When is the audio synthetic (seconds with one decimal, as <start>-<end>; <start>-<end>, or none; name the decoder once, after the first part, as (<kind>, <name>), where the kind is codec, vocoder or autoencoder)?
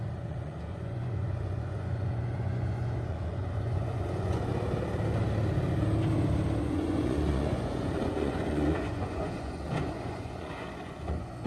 0.0-4.5 (vocoder, Vocos); 6.6-11.5